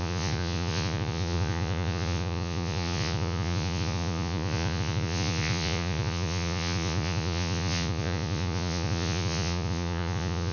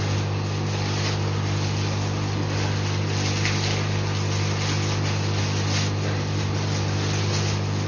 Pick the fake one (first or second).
first